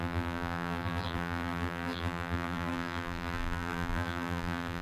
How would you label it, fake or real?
fake